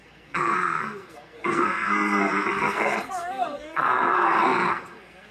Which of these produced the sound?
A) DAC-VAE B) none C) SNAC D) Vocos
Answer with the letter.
C